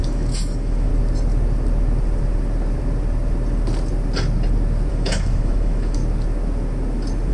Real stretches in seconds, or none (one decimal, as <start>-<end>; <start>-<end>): 0.9-4.9; 6.0-7.3